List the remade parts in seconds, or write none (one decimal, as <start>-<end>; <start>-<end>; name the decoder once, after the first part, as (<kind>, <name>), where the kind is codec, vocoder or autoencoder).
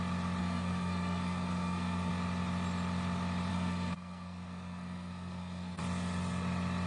0.4-2.1 (codec, SNAC); 3.5-5.8